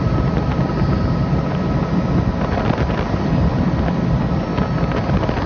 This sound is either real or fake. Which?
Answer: real